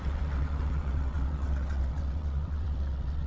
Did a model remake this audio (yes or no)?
yes